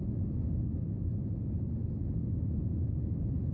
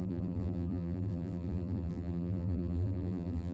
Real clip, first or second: first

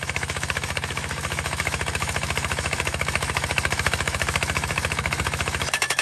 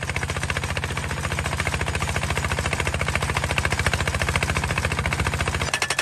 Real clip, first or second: second